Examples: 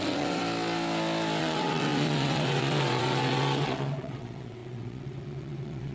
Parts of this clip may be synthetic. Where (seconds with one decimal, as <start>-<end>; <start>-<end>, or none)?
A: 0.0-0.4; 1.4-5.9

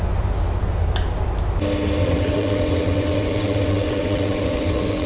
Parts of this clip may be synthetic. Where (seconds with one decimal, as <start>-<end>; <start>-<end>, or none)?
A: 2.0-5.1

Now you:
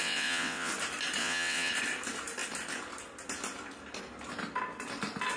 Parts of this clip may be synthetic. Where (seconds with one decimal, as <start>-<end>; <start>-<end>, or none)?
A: 0.0-0.7; 1.2-1.7

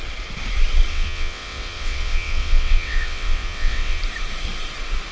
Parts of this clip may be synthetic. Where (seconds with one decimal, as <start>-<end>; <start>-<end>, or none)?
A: 0.9-4.0